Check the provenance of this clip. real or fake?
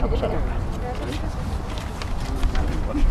real